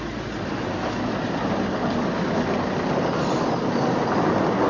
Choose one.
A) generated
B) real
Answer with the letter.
B